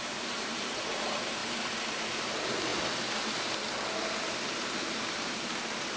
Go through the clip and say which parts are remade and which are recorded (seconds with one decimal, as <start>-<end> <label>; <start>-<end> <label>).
0.0-1.4 remade; 1.4-2.1 recorded; 2.1-2.7 remade; 2.7-4.4 recorded; 4.4-6.0 remade